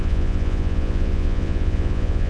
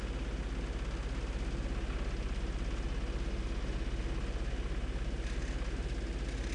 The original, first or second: second